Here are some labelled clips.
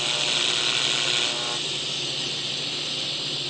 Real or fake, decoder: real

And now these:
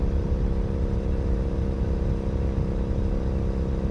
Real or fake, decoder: real